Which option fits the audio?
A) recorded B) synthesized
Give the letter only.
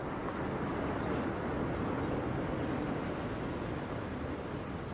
A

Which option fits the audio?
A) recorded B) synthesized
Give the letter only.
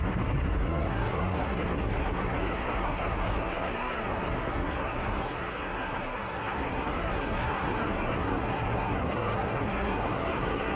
B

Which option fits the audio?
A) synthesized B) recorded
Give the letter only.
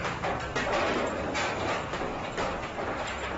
B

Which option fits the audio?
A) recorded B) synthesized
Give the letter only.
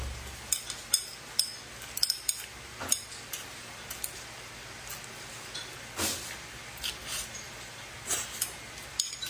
A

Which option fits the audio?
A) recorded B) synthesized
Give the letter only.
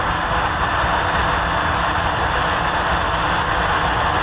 A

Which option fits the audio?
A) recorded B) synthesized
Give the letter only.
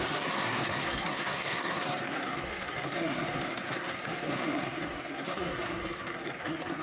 B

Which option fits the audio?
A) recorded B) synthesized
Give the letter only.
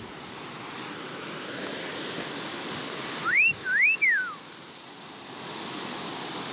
B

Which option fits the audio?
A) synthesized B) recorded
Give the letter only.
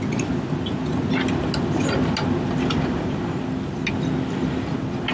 B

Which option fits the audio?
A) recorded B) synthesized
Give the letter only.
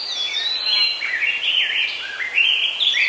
B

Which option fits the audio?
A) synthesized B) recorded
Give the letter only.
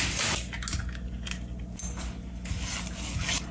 B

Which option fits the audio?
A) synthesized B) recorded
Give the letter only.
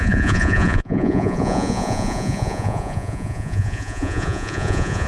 A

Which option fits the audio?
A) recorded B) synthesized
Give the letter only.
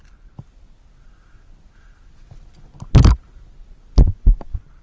A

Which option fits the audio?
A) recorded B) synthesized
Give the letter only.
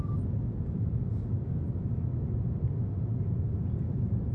A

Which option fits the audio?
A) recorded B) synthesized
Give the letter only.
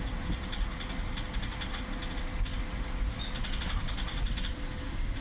A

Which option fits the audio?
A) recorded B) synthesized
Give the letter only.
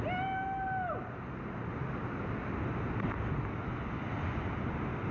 A